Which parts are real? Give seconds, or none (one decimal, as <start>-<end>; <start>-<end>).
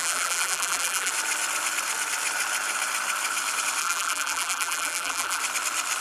1.1-3.8; 5.4-6.0